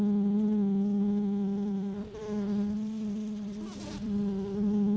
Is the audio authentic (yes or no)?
no